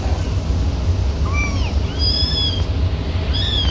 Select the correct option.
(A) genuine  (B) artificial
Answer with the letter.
A